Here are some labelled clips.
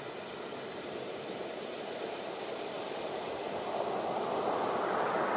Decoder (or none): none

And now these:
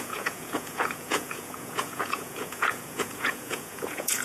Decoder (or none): vocoder, Vocos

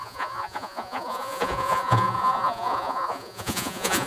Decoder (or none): vocoder, Vocos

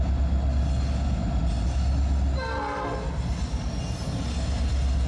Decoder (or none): none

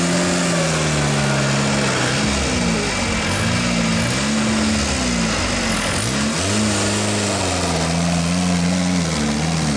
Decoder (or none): none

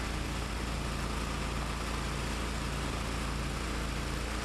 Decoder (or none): none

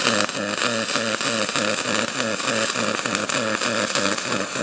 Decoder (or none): none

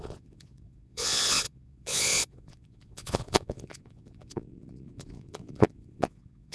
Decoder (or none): vocoder, Vocos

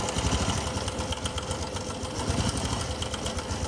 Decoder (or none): none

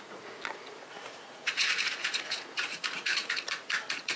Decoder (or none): vocoder, Vocos